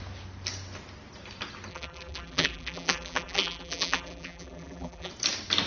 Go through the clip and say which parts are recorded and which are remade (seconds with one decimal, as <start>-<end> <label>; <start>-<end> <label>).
0.0-1.7 recorded; 1.7-5.1 remade; 5.1-5.7 recorded